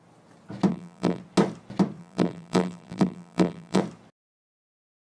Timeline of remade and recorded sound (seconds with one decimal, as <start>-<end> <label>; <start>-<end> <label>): 0.0-0.7 recorded; 0.7-1.2 remade; 1.2-2.0 recorded; 2.0-3.8 remade; 3.8-5.1 recorded